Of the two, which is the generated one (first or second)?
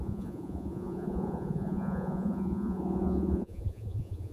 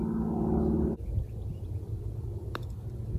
first